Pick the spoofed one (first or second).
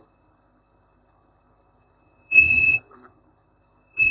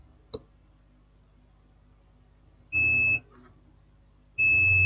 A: first